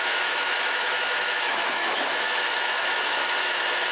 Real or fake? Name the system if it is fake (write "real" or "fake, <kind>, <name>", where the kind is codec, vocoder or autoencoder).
fake, autoencoder, DAC-VAE